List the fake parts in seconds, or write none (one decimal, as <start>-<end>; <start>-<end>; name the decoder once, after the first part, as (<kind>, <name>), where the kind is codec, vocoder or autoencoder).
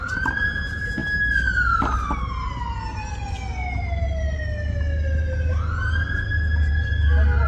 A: none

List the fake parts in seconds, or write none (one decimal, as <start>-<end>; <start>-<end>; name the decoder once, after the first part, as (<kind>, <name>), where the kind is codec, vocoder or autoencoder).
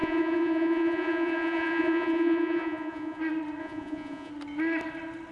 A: 0.0-3.2 (vocoder, Vocos); 3.6-4.3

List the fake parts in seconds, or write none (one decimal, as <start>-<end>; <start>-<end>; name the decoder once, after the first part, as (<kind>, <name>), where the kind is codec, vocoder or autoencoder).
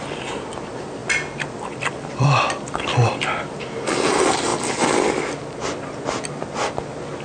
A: 1.0-3.6 (vocoder, BigVGAN v2)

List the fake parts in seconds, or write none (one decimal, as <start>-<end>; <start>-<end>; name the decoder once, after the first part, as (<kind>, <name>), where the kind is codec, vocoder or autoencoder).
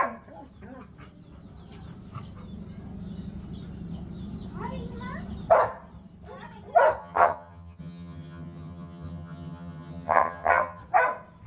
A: 7.0-10.8 (vocoder, HiFi-GAN)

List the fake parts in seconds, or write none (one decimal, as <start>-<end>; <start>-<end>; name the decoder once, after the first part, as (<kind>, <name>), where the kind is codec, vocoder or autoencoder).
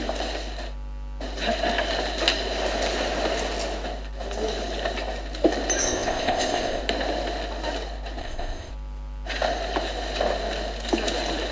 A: 5.8-6.8 (codec, ZipCodec); 8.2-8.7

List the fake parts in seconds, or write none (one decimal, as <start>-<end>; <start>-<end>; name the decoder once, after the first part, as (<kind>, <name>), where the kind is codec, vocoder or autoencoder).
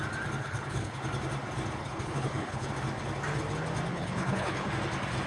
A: 0.4-1.0 (codec, HILCodec); 1.8-2.7; 3.9-4.7